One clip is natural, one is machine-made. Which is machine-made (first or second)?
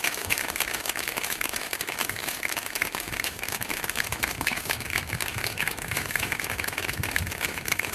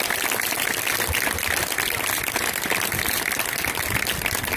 first